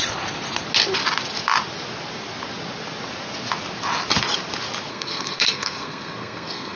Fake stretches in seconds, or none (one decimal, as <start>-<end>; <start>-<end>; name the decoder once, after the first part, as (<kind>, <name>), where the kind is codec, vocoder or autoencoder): 4.9-6.8 (codec, SNAC)